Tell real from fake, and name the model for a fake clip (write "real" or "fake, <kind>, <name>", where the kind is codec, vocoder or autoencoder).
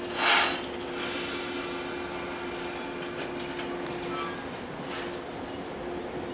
real